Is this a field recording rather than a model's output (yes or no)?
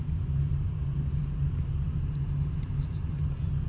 yes